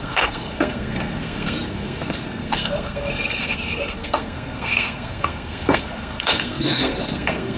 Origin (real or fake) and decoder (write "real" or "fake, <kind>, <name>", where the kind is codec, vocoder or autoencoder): fake, codec, SNAC